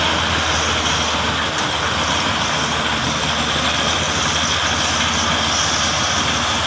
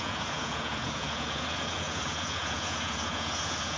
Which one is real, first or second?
first